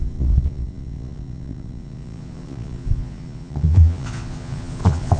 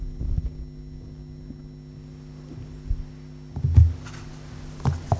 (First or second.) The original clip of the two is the second